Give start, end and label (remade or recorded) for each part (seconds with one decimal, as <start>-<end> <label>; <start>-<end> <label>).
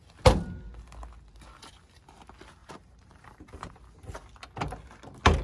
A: 0.0-2.6 recorded; 2.6-3.7 remade; 3.7-5.4 recorded